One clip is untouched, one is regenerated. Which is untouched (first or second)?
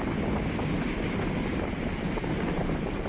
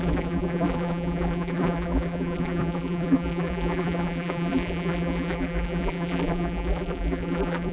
first